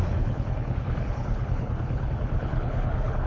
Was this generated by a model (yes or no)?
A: yes